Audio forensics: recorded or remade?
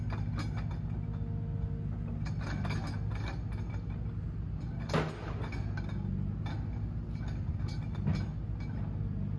recorded